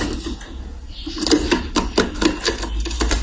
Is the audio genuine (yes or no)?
yes